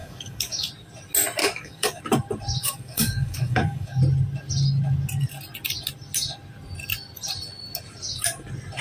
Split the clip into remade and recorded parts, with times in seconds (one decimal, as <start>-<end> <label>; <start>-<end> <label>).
0.0-0.7 remade; 0.7-1.4 recorded; 1.4-2.0 remade; 2.0-2.6 recorded; 2.6-4.0 remade; 4.0-8.8 recorded